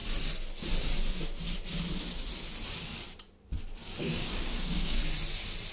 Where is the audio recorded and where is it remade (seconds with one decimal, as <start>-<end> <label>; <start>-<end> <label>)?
0.0-4.0 recorded; 4.0-5.0 remade; 5.0-5.7 recorded